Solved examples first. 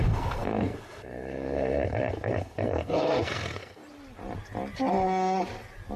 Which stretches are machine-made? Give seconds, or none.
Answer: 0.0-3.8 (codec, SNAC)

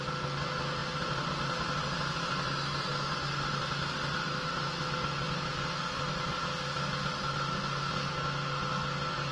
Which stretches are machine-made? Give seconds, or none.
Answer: none

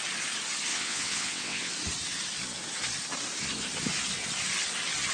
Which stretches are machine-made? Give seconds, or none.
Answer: 0.7-1.7 (vocoder, WaveNeXt)

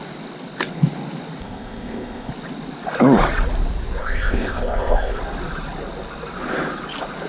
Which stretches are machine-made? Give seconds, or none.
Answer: 1.4-2.3 (codec, ZipCodec); 4.0-5.2

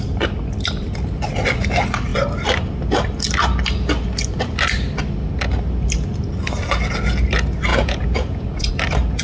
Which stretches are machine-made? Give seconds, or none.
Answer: 7.7-8.7 (vocoder, Vocos)

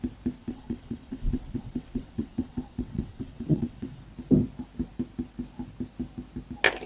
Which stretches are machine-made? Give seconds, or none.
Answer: 0.4-4.0 (vocoder, WaveNeXt)

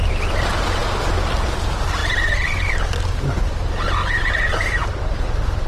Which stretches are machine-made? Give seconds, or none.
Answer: 4.0-5.0 (vocoder, BigVGAN v2)

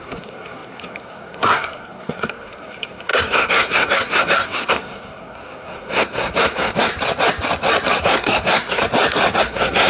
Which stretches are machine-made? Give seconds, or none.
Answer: 0.0-6.9 (codec, SNAC); 8.0-8.8; 9.4-9.9